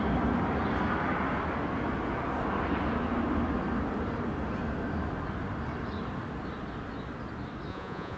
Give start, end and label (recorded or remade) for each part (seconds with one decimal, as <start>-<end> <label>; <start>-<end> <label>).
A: 0.0-7.7 recorded; 7.7-8.2 remade